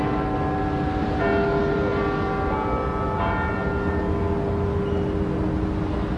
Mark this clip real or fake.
real